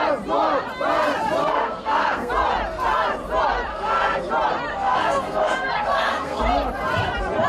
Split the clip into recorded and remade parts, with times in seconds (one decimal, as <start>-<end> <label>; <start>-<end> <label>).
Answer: 0.0-1.4 recorded; 1.4-2.3 remade; 2.3-3.7 recorded; 3.7-4.3 remade; 4.3-4.7 recorded; 4.7-6.4 remade; 6.4-7.5 recorded